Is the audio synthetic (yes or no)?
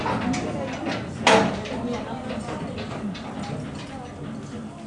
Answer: no